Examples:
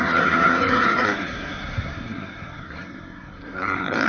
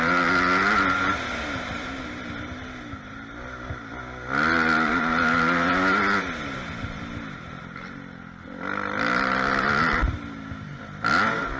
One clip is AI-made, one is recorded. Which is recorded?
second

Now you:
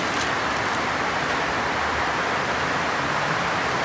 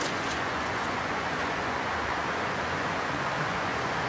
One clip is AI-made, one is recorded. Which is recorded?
first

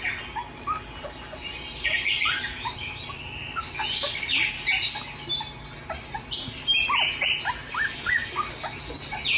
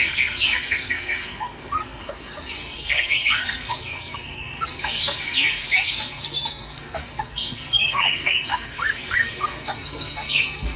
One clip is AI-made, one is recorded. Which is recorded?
first